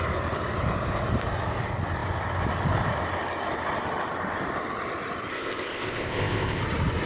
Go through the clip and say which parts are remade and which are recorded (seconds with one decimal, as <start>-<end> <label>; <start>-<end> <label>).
0.0-5.3 recorded; 5.3-6.6 remade; 6.6-7.1 recorded